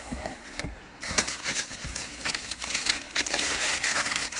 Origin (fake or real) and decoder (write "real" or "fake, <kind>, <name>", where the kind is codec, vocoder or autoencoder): fake, codec, SNAC